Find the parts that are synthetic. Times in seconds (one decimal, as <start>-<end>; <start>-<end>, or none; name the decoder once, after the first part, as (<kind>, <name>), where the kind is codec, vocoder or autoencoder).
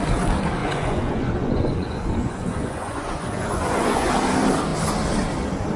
0.6-4.1 (vocoder, Vocos)